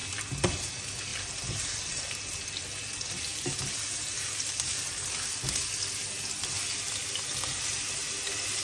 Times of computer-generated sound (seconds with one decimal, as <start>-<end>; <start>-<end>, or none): 0.0-0.7; 1.1-2.1; 3.3-5.1